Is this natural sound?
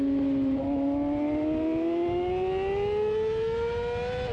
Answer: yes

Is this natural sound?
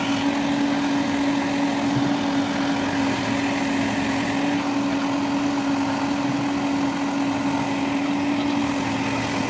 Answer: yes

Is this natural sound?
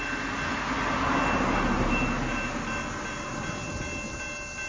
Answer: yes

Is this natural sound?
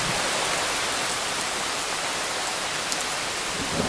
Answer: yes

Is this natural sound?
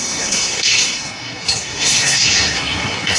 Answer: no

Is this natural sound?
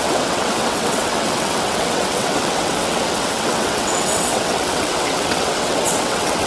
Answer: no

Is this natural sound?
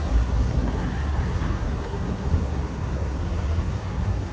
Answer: no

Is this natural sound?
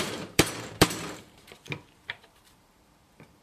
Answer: no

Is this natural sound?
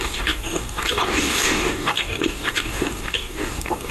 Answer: no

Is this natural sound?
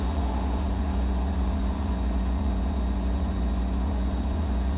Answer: no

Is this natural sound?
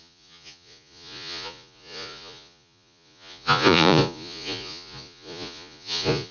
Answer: no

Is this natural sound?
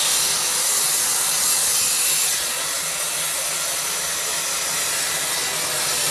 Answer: yes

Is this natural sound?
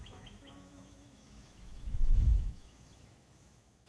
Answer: no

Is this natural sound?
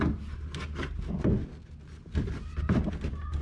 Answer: yes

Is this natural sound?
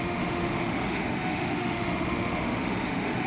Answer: no